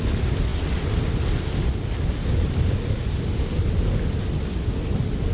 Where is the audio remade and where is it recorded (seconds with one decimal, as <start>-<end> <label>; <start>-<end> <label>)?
0.0-5.3 recorded